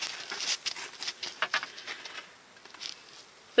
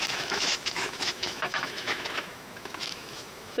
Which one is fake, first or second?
second